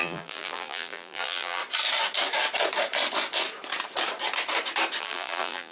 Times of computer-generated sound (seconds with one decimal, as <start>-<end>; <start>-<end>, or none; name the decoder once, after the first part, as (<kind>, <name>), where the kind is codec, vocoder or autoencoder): 0.0-1.6 (vocoder, BigVGAN v2); 5.0-5.7

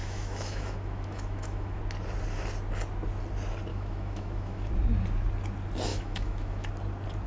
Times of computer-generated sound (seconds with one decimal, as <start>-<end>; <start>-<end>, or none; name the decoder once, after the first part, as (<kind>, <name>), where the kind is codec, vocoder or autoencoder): 0.0-1.8 (autoencoder, DAC-VAE); 3.7-4.7; 5.9-6.7

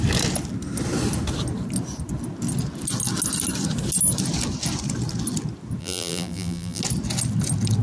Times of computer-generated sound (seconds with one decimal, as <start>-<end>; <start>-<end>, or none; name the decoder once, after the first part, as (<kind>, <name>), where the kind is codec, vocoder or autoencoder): 5.8-6.8 (vocoder, BigVGAN v2)

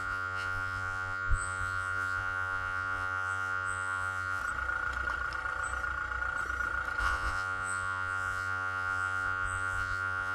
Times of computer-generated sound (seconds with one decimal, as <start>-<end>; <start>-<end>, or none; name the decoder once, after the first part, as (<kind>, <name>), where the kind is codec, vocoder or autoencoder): 0.0-4.4 (vocoder, Vocos); 7.0-10.3